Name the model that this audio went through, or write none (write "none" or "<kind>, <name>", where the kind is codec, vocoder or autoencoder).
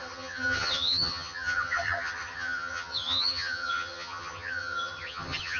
vocoder, HiFi-GAN